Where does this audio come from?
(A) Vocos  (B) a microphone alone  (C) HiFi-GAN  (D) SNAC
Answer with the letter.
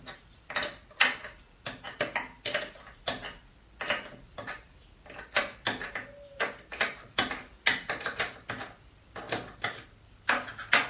B